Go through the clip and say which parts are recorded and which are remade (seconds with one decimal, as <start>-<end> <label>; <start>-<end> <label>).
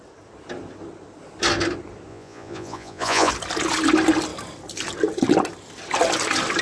0.0-2.1 recorded; 2.1-3.3 remade; 3.3-6.6 recorded